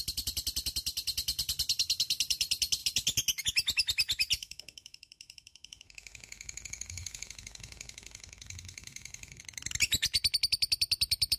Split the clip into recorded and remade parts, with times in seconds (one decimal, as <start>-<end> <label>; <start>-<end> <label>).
0.0-4.4 recorded; 4.4-9.4 remade; 9.4-11.4 recorded